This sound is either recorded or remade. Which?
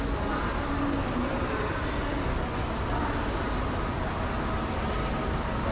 recorded